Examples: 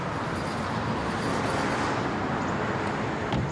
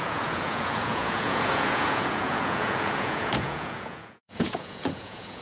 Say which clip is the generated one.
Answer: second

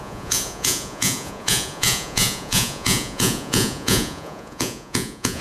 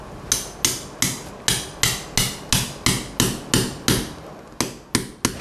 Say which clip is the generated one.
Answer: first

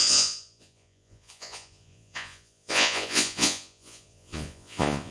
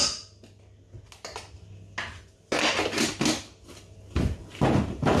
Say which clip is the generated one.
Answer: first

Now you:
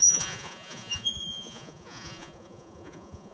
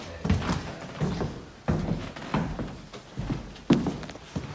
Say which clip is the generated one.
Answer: first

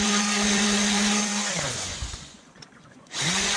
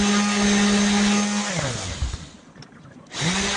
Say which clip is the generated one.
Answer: first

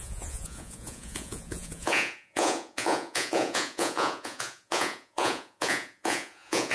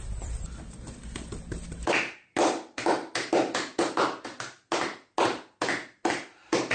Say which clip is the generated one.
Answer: first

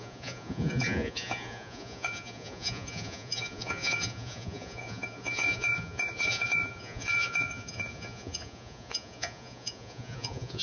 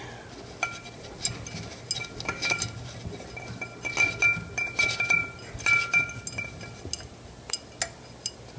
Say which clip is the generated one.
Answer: first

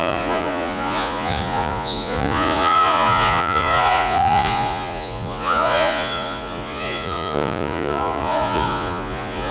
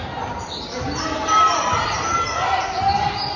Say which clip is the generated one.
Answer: first